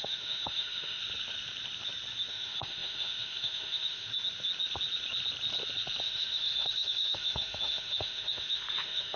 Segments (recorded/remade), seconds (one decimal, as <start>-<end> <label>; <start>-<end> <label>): 0.0-1.0 remade; 1.0-2.3 recorded; 2.3-4.1 remade; 4.1-6.0 recorded; 6.0-9.2 remade